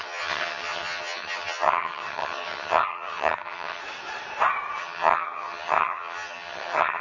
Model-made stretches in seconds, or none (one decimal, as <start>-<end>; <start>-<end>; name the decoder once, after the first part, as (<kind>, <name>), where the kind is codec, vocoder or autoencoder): 0.0-3.8 (vocoder, HiFi-GAN); 4.8-7.0